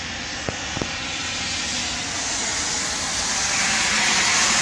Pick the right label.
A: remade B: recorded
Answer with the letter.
B